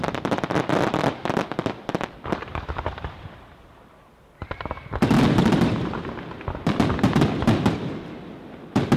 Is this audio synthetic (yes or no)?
yes